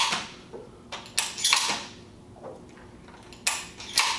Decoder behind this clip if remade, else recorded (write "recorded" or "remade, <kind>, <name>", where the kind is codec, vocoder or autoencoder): recorded